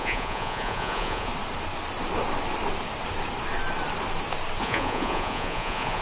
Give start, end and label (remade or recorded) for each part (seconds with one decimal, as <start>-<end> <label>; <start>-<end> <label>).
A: 0.0-1.3 remade; 1.3-4.6 recorded; 4.6-6.0 remade